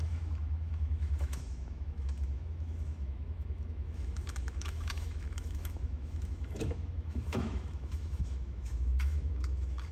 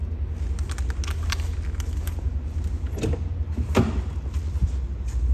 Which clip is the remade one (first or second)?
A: first